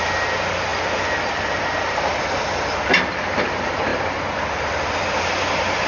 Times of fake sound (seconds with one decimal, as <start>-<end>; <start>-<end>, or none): none